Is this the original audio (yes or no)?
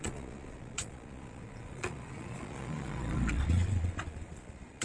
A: no